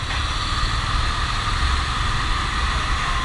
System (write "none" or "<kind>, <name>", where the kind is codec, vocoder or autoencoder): none